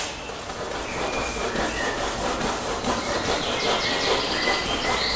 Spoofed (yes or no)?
no